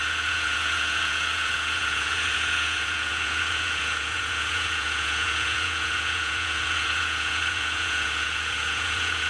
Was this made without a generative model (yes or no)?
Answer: no